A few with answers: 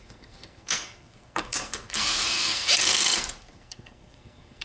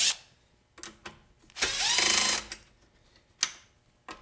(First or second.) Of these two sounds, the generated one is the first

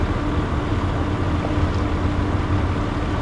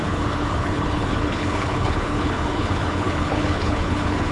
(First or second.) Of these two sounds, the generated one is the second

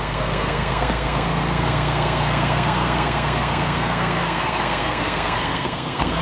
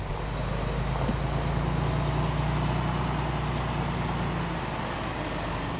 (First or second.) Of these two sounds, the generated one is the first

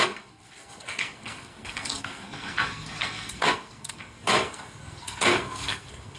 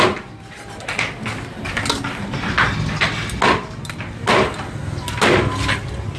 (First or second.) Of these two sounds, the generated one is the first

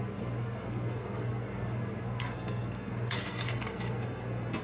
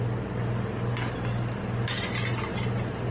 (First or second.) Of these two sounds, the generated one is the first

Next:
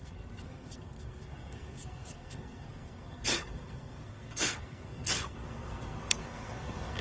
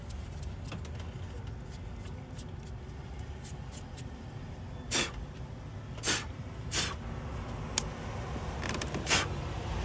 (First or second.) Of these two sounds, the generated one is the first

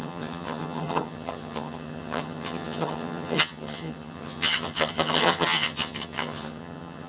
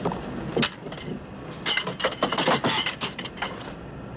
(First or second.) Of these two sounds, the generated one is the first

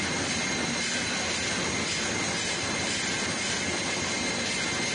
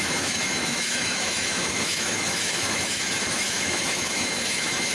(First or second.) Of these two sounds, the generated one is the second